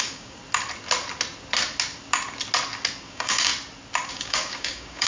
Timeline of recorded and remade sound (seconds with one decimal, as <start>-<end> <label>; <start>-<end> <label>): 0.0-0.4 remade; 0.4-3.1 recorded; 3.1-3.5 remade; 3.5-4.1 recorded; 4.1-5.1 remade